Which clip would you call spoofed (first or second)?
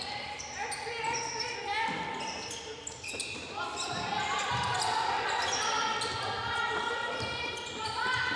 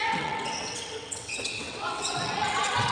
second